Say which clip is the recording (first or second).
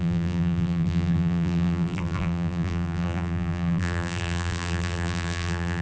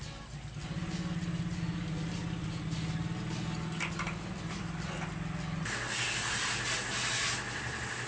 second